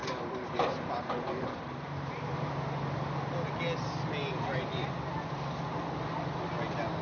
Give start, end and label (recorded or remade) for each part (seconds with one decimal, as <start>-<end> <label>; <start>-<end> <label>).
0.0-2.5 remade; 2.5-4.2 recorded; 4.2-5.0 remade; 5.0-7.0 recorded